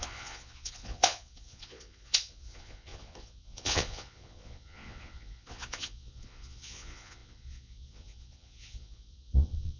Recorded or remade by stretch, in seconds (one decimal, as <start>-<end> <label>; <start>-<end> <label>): 0.0-9.8 remade

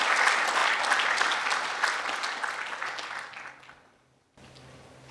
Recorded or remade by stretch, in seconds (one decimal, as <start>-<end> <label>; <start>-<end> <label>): 0.0-5.1 recorded